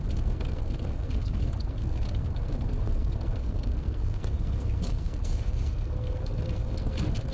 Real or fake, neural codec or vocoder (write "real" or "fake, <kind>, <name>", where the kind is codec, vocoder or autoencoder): fake, codec, SNAC